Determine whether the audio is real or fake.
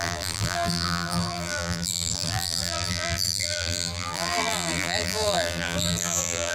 fake